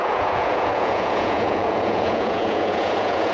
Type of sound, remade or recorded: remade